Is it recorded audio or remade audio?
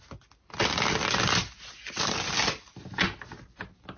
recorded